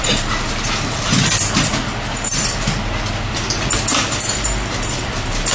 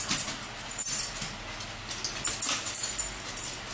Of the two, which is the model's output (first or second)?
first